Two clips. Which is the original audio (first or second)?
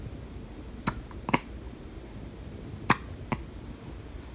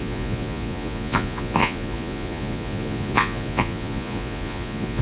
first